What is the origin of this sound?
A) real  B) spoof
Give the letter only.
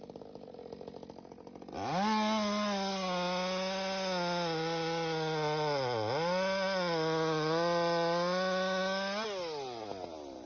A